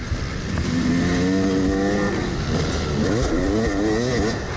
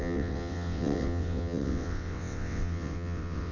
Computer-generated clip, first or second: second